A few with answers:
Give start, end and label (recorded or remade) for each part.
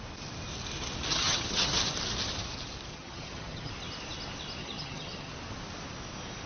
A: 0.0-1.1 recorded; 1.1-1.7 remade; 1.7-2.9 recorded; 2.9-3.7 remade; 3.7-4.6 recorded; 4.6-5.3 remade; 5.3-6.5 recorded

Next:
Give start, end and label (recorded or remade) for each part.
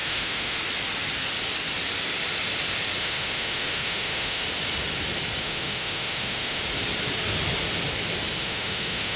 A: 0.0-0.6 remade; 0.6-3.0 recorded; 3.0-4.4 remade; 4.4-5.4 recorded; 5.4-6.6 remade; 6.6-8.4 recorded; 8.4-9.2 remade